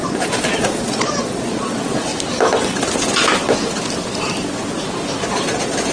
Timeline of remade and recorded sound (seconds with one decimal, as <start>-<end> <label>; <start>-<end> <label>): 0.0-2.1 remade; 2.1-5.3 recorded; 5.3-5.9 remade